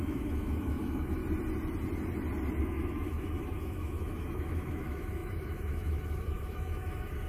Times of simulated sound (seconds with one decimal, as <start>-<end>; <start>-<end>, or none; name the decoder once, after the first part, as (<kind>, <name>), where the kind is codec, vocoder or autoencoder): 0.0-1.2 (autoencoder, DAC-VAE); 2.6-7.3